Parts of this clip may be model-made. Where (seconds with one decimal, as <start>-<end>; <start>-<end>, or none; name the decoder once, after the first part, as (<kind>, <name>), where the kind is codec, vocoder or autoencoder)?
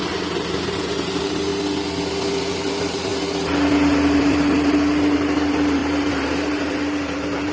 0.0-1.5 (vocoder, BigVGAN v2); 2.5-3.1; 4.2-7.5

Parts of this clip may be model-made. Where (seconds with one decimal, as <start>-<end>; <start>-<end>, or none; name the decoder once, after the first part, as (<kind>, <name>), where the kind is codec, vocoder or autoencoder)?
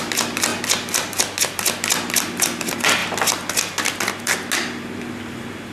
none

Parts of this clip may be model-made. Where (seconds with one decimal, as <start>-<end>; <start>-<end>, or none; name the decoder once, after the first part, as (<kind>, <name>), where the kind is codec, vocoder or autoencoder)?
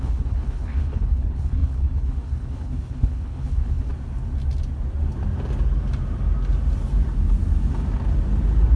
0.0-3.9 (codec, HILCodec)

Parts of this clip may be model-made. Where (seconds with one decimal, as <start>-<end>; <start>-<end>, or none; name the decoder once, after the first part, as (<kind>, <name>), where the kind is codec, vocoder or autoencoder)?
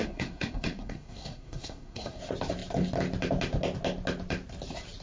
0.0-2.2 (codec, SNAC)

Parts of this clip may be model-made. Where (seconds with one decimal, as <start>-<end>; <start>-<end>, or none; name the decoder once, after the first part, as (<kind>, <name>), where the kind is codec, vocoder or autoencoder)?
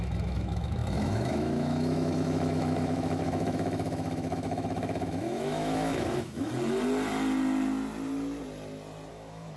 0.0-6.5 (autoencoder, DAC-VAE); 9.1-9.6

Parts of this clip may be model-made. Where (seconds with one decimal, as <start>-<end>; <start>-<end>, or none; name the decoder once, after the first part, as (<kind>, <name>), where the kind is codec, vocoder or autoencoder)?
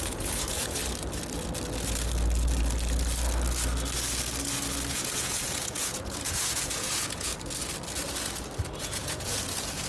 0.0-0.8 (vocoder, Vocos); 4.9-7.3; 8.8-9.9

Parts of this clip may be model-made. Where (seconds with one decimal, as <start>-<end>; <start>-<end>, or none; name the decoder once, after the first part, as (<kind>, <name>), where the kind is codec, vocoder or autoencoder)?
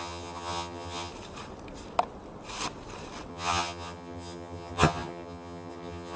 0.0-1.1 (vocoder, HiFi-GAN); 3.3-6.2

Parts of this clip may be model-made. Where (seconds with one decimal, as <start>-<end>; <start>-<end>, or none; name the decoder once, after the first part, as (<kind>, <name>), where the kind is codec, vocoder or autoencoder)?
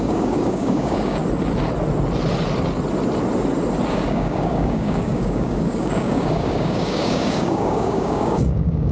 0.0-1.2 (codec, DAC); 3.9-8.9